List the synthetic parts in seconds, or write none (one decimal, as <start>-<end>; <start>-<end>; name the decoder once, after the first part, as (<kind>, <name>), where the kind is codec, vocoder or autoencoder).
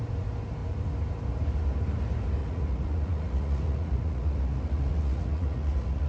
2.4-6.1 (vocoder, Vocos)